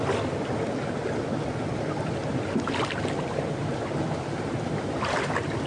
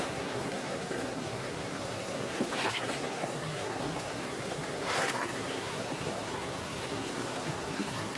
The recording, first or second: first